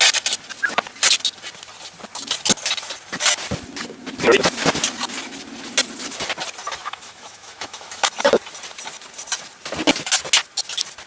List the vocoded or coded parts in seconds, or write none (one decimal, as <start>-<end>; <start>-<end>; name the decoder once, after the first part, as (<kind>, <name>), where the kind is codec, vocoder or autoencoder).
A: 6.8-8.1 (autoencoder, DAC-VAE)